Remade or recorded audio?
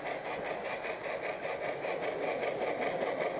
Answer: recorded